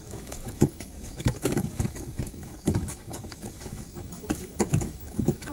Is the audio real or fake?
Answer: fake